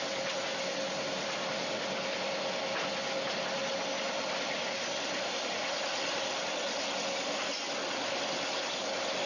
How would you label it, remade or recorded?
recorded